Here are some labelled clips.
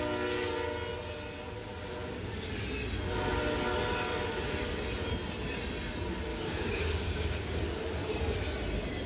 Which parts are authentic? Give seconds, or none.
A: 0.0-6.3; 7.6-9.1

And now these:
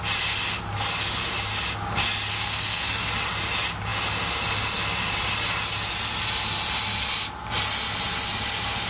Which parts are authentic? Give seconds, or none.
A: 0.0-2.3; 3.1-8.9

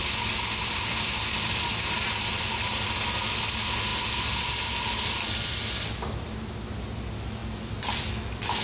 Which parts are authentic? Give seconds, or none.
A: 0.0-8.6

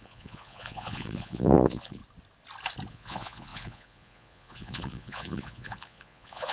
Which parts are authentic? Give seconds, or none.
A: 2.0-2.9

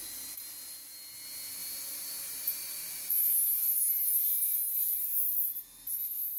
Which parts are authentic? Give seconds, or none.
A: 0.0-1.6; 3.4-6.4